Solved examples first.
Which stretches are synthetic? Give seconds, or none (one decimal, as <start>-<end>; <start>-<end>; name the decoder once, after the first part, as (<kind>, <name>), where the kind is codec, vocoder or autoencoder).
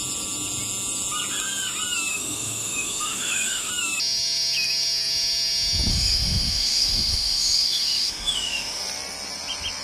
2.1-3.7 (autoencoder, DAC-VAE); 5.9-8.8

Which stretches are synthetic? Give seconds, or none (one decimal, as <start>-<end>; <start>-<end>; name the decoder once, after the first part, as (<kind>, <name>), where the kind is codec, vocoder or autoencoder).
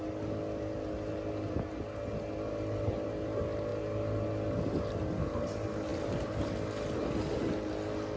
none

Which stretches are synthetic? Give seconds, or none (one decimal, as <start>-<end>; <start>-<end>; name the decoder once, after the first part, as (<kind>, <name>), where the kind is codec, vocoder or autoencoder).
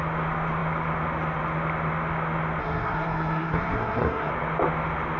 2.6-4.3 (codec, SNAC)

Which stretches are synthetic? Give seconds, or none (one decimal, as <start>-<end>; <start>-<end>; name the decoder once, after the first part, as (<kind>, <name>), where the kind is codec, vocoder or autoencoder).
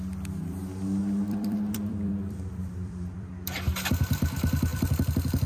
1.0-3.3 (vocoder, BigVGAN v2)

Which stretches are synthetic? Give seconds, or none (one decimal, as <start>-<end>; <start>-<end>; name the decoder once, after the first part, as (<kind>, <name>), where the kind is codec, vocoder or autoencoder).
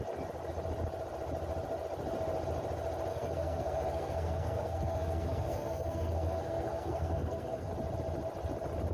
3.1-7.7 (codec, SNAC)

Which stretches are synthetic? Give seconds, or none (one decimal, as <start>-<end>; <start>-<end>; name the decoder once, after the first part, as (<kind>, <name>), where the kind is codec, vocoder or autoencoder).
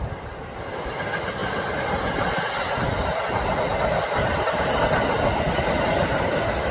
none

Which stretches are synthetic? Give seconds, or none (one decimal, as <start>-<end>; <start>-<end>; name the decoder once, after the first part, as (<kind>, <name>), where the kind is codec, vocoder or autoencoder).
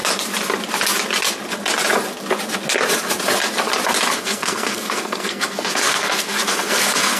4.1-7.2 (codec, SNAC)